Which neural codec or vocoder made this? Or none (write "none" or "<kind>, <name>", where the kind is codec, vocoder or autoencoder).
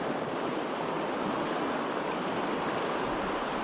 none